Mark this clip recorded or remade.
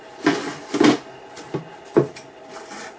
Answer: recorded